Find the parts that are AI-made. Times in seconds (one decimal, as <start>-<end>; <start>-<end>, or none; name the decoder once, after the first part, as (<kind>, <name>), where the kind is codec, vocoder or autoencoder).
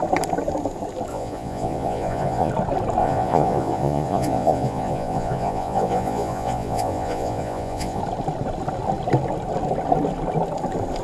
1.1-2.5 (vocoder, Vocos); 3.0-8.0